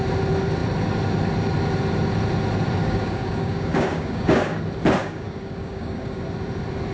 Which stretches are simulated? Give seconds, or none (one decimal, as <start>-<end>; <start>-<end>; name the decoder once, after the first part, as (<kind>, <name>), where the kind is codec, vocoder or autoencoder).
2.8-4.6 (codec, DAC); 5.0-6.2